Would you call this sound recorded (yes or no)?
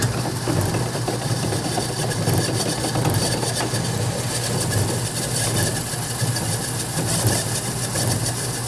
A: yes